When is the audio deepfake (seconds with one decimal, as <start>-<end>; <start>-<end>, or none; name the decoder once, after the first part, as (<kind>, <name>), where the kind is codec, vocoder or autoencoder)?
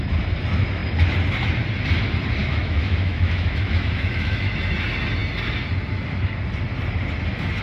2.4-4.5 (autoencoder, DAC-VAE)